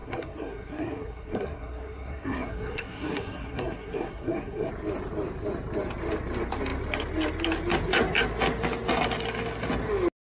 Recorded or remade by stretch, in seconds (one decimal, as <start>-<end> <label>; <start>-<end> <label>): 0.0-4.7 remade; 4.7-10.3 recorded